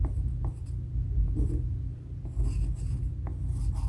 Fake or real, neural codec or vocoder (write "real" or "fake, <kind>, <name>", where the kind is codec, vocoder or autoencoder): real